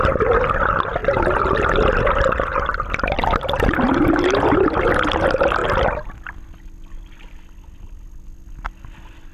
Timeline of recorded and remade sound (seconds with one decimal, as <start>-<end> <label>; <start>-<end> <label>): 0.0-9.3 recorded

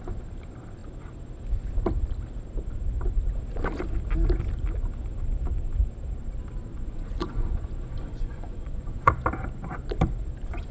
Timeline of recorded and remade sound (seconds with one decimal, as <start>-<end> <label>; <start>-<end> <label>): 0.0-6.7 recorded; 6.7-9.1 remade; 9.1-10.7 recorded

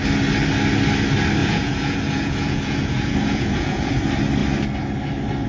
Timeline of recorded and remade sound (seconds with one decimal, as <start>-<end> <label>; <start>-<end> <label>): 0.0-1.4 recorded; 1.4-3.9 remade; 3.9-5.5 recorded

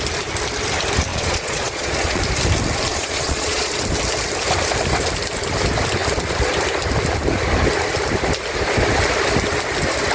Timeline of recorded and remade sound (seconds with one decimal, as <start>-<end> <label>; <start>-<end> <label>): 0.0-1.1 recorded; 1.1-2.2 remade; 2.2-2.9 recorded; 2.9-3.7 remade; 3.7-10.1 recorded

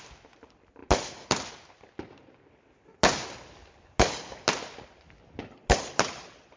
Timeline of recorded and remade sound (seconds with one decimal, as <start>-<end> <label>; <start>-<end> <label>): 0.0-6.6 recorded